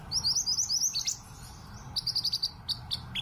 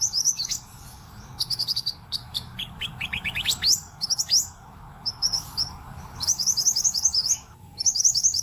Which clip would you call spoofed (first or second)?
second